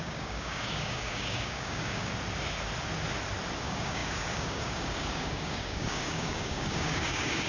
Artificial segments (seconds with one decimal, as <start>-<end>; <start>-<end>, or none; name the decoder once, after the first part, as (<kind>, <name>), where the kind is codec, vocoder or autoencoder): 0.0-2.1 (codec, DAC); 3.6-7.5